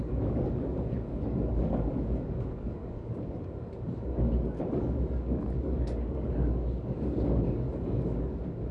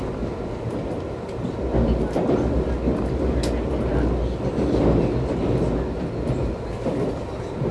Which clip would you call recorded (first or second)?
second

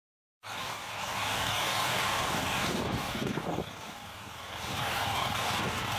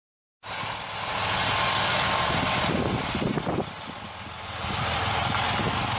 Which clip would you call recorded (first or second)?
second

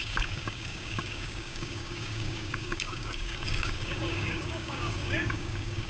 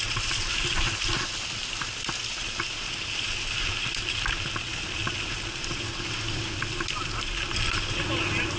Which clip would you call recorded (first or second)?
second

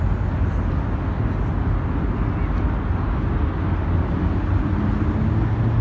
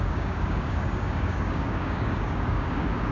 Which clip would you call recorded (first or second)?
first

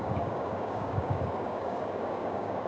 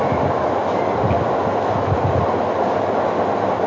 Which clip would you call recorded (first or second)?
second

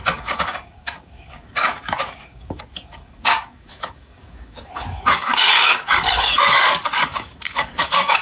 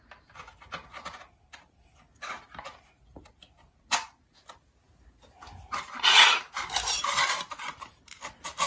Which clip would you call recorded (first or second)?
second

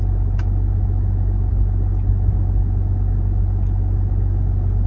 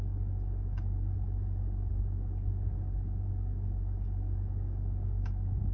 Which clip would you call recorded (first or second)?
first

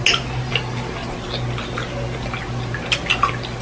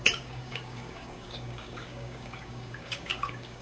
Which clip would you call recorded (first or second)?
first